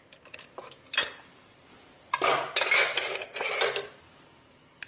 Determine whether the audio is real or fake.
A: fake